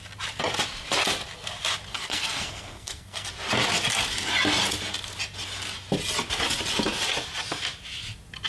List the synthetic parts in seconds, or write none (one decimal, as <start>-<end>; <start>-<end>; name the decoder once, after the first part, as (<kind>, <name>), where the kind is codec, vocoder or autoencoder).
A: 1.9-3.3 (codec, SNAC)